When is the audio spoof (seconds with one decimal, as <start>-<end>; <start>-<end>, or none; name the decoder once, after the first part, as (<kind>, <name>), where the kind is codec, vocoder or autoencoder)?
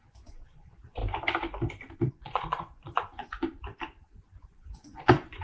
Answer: 0.0-1.0 (vocoder, Vocos); 2.1-3.2; 4.5-5.4